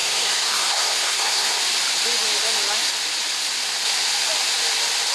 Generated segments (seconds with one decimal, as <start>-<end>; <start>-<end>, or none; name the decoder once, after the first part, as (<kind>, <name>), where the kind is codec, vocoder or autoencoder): 0.0-1.6 (codec, SNAC)